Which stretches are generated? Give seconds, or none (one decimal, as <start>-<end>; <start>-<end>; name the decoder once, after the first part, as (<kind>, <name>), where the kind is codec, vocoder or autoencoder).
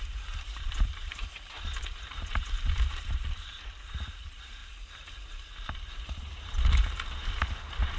0.0-4.6 (vocoder, BigVGAN v2); 5.8-8.0